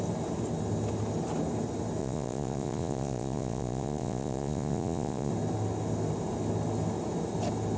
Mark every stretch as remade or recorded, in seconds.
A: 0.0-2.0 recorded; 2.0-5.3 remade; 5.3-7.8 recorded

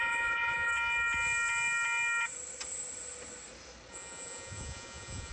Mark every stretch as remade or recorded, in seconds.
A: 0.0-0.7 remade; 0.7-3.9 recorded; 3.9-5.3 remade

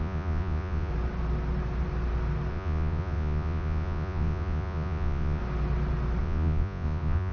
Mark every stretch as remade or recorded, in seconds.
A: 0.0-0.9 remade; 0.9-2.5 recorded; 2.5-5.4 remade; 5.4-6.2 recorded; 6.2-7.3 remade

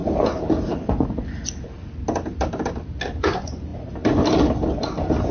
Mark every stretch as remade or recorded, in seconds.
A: 0.0-3.2 recorded; 3.2-3.7 remade; 3.7-5.3 recorded